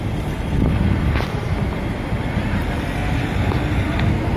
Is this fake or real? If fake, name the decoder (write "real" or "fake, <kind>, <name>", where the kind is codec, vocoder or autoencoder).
real